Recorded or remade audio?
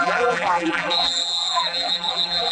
remade